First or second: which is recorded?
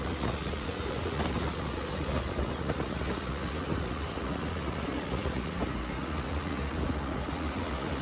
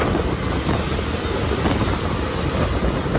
second